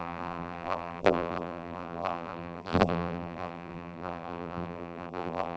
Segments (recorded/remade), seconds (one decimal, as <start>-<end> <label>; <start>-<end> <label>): 0.0-5.6 remade